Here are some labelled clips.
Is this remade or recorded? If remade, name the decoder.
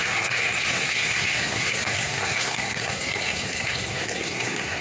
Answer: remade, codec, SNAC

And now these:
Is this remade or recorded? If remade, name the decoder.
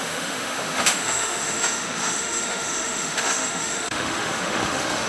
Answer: remade, autoencoder, DAC-VAE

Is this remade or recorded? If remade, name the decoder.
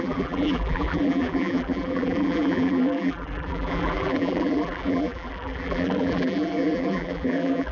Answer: remade, vocoder, BigVGAN v2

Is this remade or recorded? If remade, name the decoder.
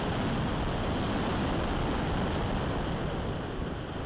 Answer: recorded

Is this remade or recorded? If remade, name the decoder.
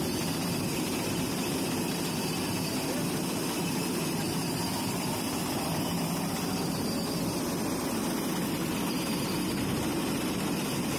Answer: recorded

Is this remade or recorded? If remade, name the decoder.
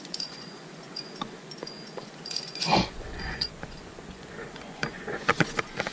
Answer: remade, vocoder, Vocos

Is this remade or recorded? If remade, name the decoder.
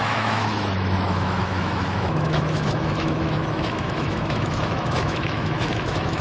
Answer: remade, autoencoder, DAC-VAE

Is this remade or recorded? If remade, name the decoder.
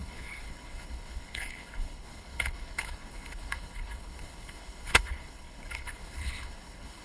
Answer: remade, codec, HILCodec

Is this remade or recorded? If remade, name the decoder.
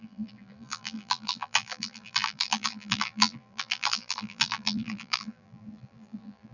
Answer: remade, vocoder, BigVGAN v2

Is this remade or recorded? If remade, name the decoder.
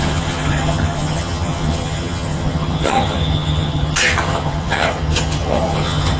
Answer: remade, vocoder, HiFi-GAN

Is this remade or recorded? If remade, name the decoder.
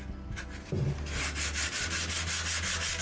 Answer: recorded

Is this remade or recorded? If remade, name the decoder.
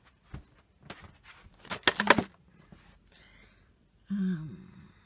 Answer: recorded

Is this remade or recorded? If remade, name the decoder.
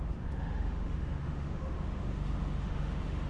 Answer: remade, autoencoder, DAC-VAE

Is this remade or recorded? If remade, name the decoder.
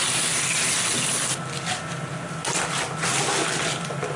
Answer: recorded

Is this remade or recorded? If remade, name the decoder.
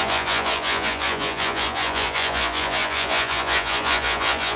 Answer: remade, vocoder, Vocos